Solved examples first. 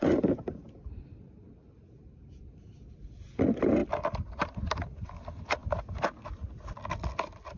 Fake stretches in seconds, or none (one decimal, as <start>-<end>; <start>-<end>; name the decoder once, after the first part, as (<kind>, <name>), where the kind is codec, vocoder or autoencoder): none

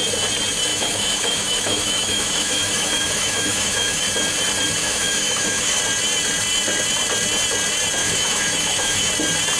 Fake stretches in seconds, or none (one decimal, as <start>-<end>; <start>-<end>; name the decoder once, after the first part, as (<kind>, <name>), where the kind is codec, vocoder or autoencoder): 0.7-4.0 (autoencoder, DAC-VAE); 4.8-5.8; 8.0-9.1

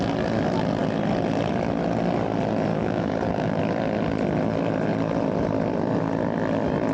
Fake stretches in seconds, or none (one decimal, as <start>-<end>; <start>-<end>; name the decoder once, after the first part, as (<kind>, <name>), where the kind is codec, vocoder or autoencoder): 2.7-3.6 (codec, DAC)

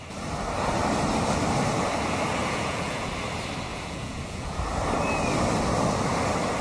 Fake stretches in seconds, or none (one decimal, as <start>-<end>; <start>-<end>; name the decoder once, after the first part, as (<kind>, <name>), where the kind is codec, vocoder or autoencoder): 2.4-3.1 (vocoder, Vocos); 3.7-4.6